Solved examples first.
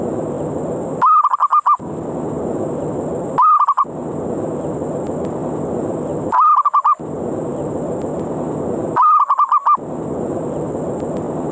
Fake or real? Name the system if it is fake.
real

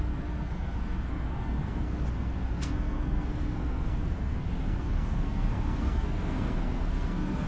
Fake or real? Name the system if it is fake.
fake, codec, SNAC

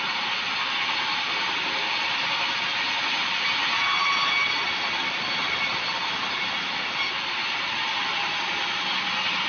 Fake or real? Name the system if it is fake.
real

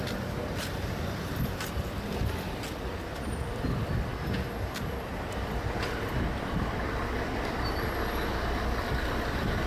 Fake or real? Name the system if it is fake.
fake, vocoder, BigVGAN v2